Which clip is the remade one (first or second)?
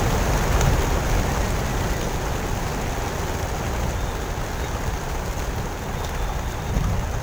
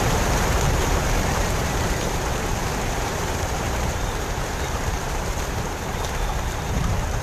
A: second